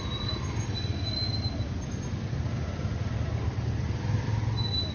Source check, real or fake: real